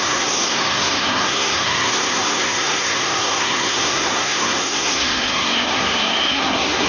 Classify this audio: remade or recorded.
remade